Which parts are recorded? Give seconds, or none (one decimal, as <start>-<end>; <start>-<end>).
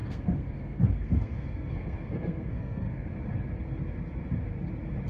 3.1-5.1